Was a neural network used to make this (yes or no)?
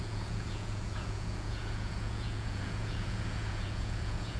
yes